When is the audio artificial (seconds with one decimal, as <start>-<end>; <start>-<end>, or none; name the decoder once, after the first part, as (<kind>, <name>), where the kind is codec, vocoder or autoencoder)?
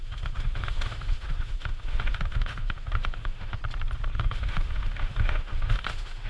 0.0-3.6 (autoencoder, DAC-VAE); 4.2-6.3